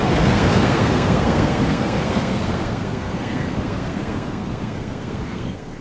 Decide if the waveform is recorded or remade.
remade